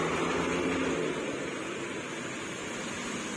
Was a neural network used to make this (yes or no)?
no